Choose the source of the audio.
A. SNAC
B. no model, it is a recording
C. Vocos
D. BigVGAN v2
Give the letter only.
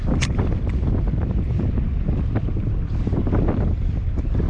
B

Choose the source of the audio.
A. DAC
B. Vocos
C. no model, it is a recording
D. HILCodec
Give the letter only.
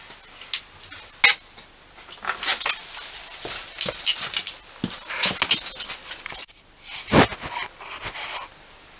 C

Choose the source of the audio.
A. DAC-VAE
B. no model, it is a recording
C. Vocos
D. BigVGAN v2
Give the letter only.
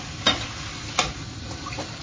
B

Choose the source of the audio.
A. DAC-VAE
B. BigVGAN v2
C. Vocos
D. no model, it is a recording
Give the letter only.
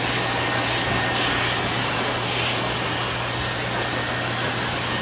D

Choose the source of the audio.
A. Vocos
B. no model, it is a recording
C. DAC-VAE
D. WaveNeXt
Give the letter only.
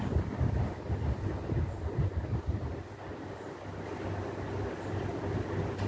B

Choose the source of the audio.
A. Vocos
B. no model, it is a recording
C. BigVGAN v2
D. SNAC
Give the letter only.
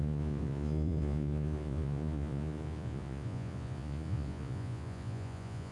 A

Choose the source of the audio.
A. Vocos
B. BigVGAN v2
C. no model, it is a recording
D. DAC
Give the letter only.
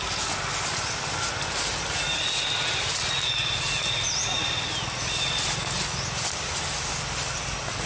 C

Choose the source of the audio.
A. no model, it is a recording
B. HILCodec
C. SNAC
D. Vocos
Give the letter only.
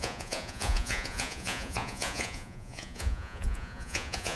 D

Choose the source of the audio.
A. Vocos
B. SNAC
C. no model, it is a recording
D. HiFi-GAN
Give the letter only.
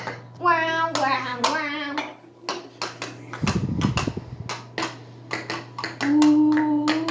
C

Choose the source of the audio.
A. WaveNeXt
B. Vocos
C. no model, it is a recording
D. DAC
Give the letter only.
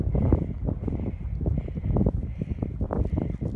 C